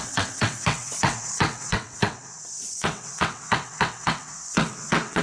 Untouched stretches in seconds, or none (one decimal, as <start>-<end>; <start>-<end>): none